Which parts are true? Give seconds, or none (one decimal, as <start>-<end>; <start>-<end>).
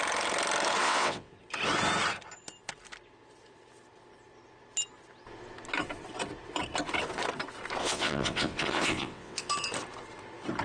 0.0-0.8; 1.3-7.8; 9.5-10.6